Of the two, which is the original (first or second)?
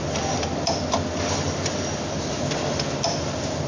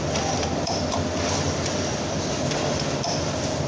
first